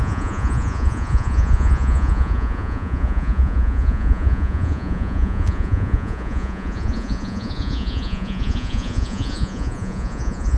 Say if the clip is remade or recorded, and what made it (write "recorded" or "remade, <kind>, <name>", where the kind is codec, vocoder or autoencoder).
remade, vocoder, Vocos